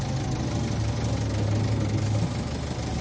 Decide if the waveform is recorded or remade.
recorded